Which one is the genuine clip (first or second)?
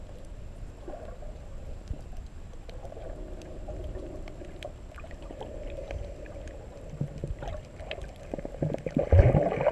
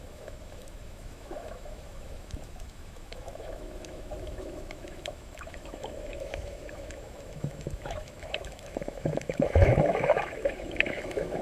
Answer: first